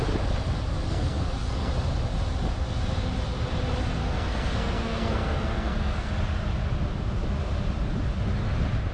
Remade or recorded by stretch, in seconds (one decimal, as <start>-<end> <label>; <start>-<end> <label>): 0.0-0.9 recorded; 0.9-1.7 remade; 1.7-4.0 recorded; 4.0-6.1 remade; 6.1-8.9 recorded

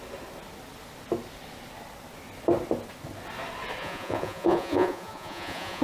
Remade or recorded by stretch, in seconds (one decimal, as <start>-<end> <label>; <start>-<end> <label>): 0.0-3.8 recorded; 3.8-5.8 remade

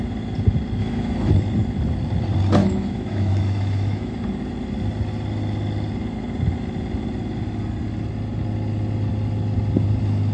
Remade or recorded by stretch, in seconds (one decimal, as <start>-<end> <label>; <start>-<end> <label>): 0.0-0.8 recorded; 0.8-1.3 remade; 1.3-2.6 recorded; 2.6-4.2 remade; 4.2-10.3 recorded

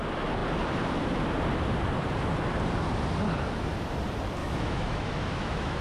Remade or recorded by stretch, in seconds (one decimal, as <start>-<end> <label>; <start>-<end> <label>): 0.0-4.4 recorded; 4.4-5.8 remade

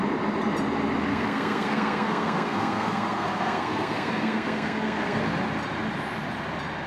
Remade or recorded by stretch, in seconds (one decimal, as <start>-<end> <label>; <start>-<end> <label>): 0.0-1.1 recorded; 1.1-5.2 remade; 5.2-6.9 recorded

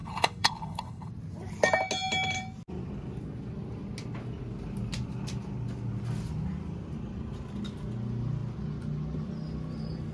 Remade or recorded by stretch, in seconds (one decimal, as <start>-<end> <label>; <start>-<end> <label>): 0.0-1.1 remade; 1.1-10.1 recorded